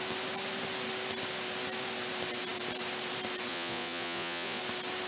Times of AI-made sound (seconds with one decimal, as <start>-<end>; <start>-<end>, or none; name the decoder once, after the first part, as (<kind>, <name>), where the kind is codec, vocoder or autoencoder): 3.5-4.6 (vocoder, Vocos)